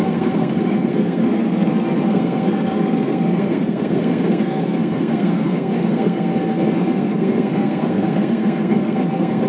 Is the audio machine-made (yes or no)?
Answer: yes